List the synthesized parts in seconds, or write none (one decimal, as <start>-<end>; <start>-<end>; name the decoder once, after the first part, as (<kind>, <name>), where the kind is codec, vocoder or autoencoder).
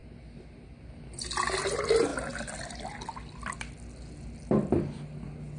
none